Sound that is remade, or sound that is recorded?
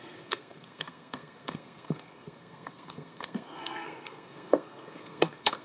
remade